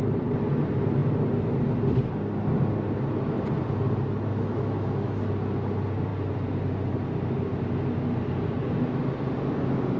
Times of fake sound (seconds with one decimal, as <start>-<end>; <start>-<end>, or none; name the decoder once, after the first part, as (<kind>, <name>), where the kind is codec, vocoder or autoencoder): 4.3-5.3 (autoencoder, DAC-VAE)